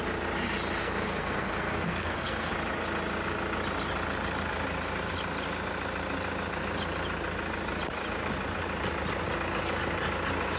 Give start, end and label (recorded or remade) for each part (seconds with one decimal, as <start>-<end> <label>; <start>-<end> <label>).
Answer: 0.0-0.8 recorded; 0.8-2.5 remade; 2.5-10.6 recorded